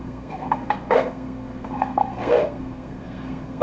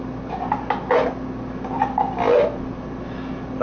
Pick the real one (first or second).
second